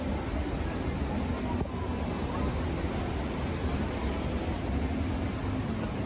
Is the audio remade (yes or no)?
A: no